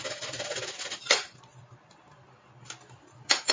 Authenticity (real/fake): real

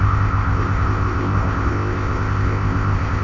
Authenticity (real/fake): fake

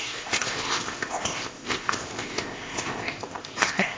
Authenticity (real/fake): fake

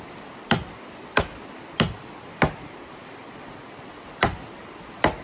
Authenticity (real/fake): real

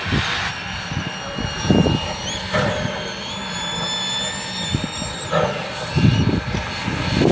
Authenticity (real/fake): real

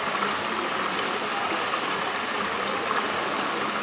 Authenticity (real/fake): real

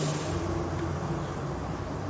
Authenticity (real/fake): real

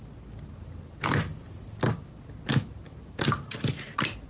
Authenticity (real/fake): real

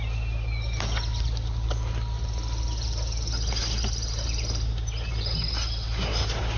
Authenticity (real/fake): real